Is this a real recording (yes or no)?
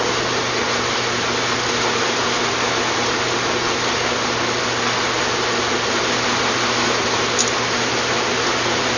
yes